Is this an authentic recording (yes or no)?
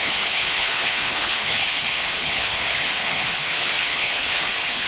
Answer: no